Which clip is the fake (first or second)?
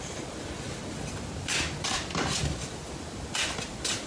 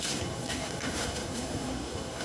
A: second